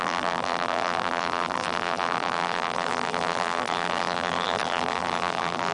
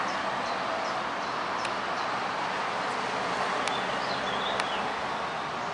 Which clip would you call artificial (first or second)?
first